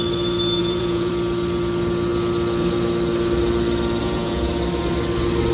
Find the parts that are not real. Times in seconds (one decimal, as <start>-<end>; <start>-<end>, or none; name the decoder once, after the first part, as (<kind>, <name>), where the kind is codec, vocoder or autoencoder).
0.6-1.1 (vocoder, Vocos); 4.0-4.5